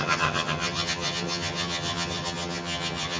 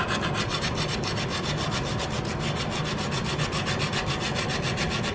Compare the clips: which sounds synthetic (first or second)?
first